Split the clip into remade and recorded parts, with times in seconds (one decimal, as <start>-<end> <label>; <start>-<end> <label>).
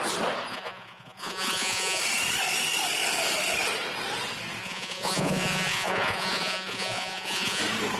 0.0-0.5 recorded; 0.5-2.0 remade; 2.0-4.6 recorded; 4.6-7.6 remade; 7.6-8.0 recorded